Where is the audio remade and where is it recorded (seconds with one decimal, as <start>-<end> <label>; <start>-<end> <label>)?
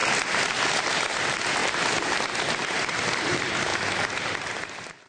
0.0-0.8 recorded; 0.8-1.6 remade; 1.6-2.2 recorded; 2.2-3.7 remade; 3.7-5.1 recorded